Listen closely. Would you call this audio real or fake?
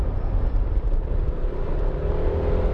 real